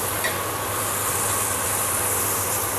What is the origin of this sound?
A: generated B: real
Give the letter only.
A